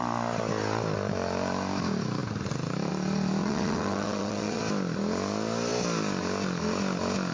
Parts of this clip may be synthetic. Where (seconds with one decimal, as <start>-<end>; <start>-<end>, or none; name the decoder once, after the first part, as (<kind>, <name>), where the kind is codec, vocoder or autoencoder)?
3.4-4.6 (vocoder, WaveNeXt)